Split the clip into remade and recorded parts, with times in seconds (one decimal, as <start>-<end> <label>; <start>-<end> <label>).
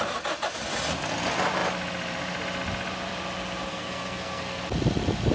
0.0-3.6 recorded; 3.6-4.6 remade; 4.6-5.3 recorded